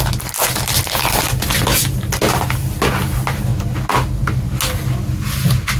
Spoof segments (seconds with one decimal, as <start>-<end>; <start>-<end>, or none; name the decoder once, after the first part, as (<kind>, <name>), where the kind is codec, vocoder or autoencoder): none